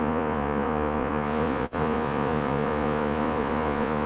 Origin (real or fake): fake